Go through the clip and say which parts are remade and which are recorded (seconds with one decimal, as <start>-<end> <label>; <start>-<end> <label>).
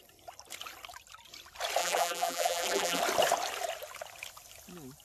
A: 0.0-1.8 recorded; 1.8-3.0 remade; 3.0-5.0 recorded